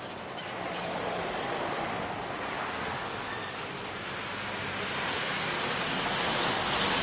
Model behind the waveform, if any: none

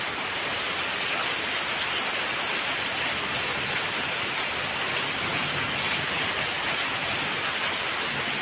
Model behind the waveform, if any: none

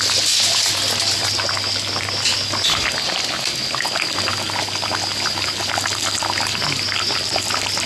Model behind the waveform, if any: none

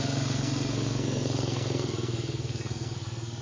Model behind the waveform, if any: codec, SNAC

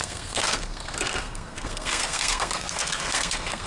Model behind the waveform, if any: codec, SNAC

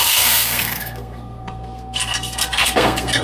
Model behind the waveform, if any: codec, SNAC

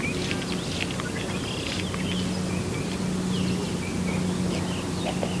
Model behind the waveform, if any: none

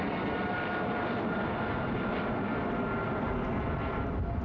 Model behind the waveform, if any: none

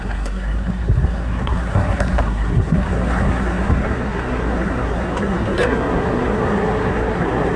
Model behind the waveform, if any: codec, SNAC